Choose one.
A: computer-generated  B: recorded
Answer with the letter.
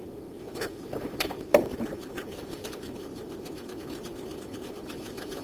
A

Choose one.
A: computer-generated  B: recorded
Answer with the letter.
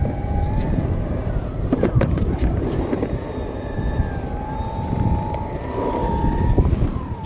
A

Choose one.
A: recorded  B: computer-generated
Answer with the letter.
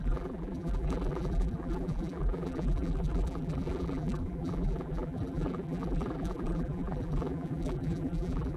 B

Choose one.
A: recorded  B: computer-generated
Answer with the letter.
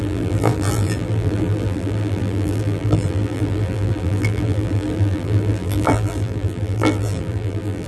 B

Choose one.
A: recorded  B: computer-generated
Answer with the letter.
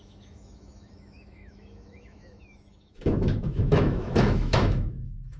B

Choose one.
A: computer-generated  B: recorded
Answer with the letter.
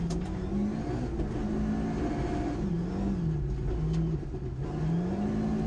B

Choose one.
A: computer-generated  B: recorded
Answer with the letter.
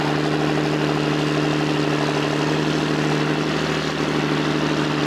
B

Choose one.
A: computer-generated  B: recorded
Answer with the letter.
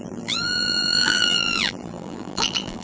A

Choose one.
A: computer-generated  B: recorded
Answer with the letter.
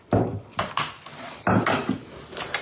B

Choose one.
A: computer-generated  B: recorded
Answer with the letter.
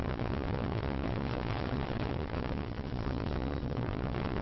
A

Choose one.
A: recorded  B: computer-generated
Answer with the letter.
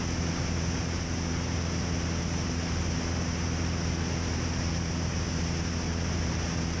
A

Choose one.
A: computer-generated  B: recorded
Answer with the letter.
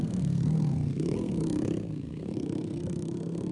A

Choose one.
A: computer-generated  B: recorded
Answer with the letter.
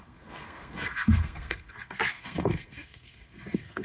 A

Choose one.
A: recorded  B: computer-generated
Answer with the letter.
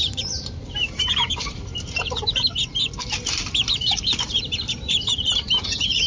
B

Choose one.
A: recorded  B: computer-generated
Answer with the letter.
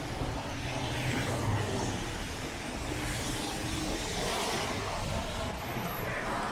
A